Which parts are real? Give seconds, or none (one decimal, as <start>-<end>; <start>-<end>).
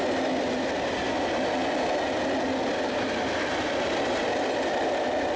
0.0-5.4